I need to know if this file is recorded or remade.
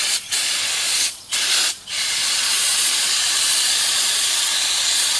remade